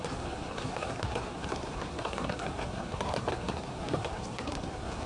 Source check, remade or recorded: remade